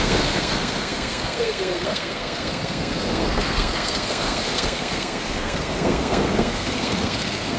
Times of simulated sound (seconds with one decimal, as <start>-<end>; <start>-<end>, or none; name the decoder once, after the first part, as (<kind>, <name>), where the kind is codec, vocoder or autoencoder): 0.0-7.6 (codec, SNAC)